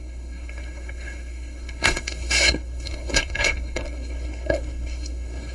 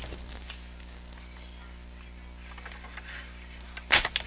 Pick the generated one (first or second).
first